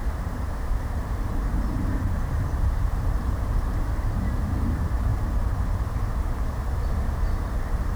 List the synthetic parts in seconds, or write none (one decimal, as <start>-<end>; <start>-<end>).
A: 0.0-8.0